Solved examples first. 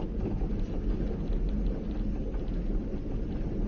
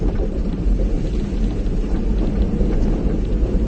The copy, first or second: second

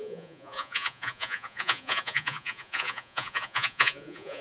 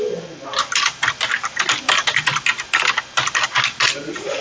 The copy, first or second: first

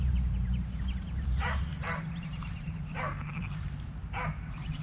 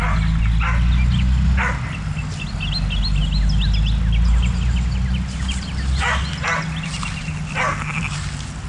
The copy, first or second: first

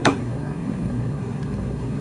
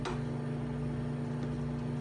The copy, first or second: first